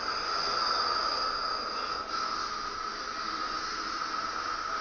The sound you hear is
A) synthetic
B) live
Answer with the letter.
B